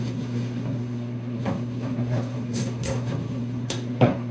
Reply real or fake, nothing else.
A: fake